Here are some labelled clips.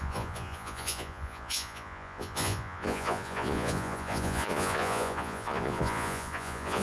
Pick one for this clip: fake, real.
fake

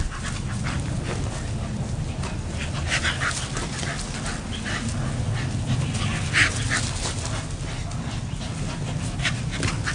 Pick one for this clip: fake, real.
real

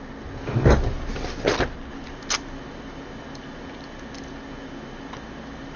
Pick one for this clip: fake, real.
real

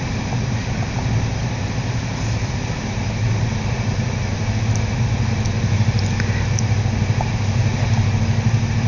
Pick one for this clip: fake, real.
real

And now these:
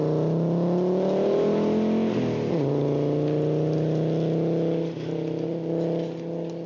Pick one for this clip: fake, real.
real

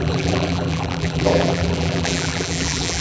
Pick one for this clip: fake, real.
fake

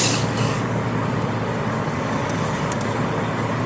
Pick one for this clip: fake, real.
fake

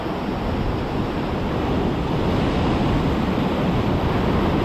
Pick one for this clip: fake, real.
real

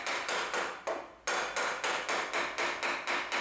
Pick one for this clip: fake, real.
real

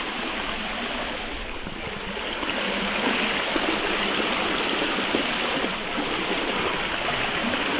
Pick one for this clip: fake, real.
real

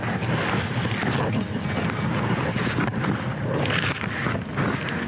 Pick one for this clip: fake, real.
real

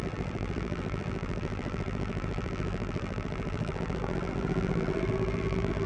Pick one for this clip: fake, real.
fake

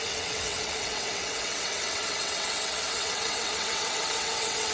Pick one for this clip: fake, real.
fake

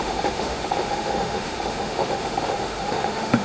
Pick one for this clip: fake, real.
fake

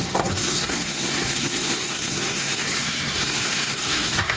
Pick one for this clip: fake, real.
fake